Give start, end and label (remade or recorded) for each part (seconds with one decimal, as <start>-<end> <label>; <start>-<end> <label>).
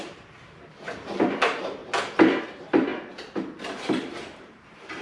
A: 0.0-1.8 remade; 1.8-2.4 recorded; 2.4-5.0 remade